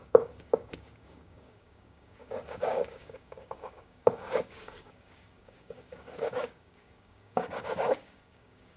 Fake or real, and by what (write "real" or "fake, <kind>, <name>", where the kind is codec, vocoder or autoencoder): fake, codec, DAC